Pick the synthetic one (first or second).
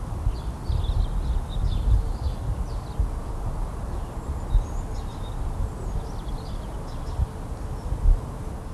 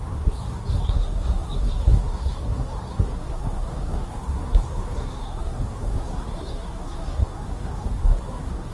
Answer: second